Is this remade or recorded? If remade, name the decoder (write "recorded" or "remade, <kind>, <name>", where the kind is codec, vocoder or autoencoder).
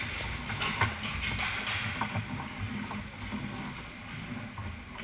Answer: recorded